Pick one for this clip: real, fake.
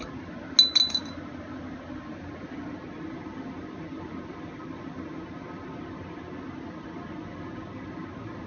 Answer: real